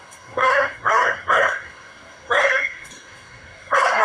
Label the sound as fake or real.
fake